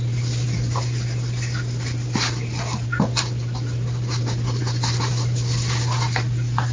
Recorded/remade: recorded